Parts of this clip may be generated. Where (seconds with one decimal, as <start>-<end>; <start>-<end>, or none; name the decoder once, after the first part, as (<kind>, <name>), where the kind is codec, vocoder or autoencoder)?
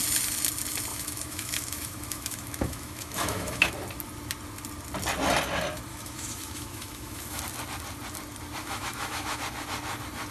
0.9-3.7 (autoencoder, DAC-VAE); 5.9-7.4; 8.6-9.4